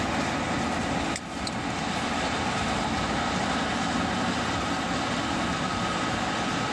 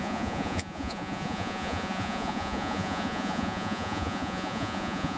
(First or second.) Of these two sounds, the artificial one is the second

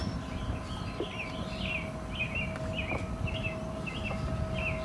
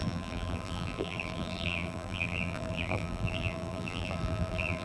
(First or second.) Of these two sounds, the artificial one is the second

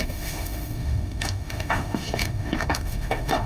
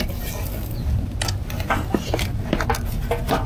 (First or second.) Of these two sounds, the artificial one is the first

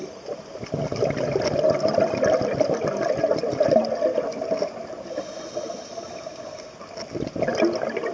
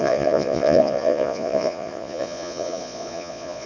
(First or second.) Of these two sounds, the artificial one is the second